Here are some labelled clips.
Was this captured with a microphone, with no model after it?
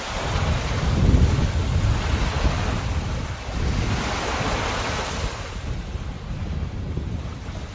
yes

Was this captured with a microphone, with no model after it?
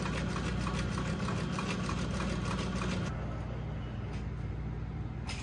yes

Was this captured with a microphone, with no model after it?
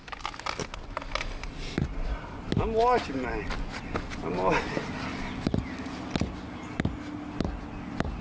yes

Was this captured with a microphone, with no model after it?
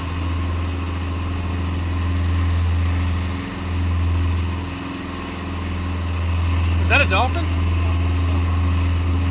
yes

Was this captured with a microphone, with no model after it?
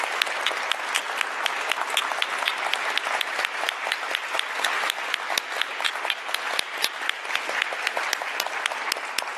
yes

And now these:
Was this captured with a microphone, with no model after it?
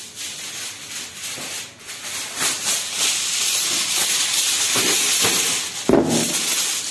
yes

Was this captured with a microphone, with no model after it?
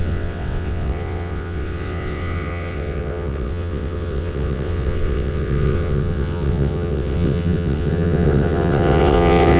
no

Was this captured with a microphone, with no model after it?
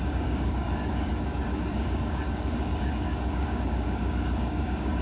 no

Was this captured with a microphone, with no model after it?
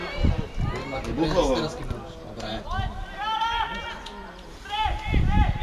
yes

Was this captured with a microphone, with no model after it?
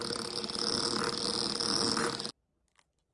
yes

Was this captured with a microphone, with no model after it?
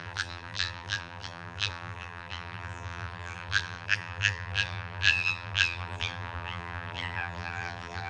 no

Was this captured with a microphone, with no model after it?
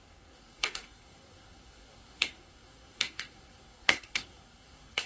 no